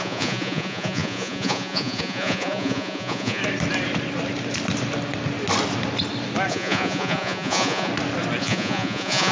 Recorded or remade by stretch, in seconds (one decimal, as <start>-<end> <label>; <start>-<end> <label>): 0.0-3.4 remade; 3.4-6.5 recorded; 6.5-7.9 remade; 7.9-8.4 recorded; 8.4-9.3 remade